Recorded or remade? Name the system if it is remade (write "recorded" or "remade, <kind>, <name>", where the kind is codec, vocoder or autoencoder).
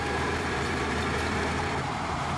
remade, vocoder, BigVGAN v2